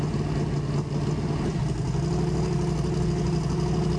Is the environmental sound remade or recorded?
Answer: recorded